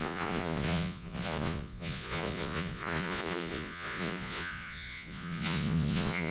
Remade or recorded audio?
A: remade